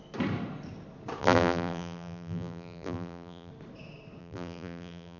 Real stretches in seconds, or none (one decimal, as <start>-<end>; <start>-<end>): 0.0-1.2; 3.5-4.2